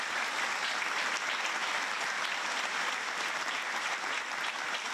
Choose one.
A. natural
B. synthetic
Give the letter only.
B